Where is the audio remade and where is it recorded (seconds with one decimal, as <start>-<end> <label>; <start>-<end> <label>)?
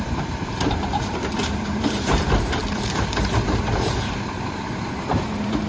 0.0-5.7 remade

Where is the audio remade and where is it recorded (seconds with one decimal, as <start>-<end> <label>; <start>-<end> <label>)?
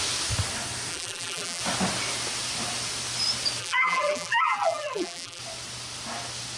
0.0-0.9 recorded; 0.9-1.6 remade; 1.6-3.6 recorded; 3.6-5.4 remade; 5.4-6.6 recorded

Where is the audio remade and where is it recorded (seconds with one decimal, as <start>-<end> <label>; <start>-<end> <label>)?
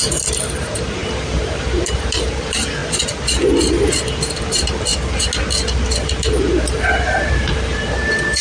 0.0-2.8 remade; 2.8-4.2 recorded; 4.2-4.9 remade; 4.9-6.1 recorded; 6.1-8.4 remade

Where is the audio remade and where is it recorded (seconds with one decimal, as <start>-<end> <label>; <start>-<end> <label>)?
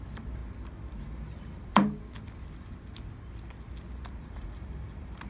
0.0-0.4 remade; 0.4-1.0 recorded; 1.0-1.8 remade; 1.8-4.2 recorded; 4.2-5.3 remade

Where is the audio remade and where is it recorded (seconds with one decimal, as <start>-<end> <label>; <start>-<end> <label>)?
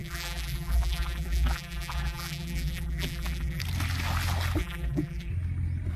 0.0-3.6 remade; 3.6-4.6 recorded; 4.6-5.3 remade; 5.3-6.0 recorded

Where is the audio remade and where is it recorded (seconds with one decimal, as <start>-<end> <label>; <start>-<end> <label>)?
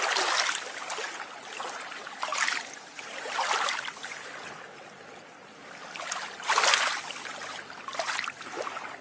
0.0-2.3 recorded; 2.3-3.3 remade; 3.3-9.0 recorded